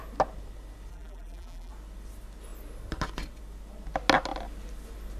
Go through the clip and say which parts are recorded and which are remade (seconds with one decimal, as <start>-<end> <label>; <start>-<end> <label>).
0.0-0.9 recorded; 0.9-1.7 remade; 1.7-5.2 recorded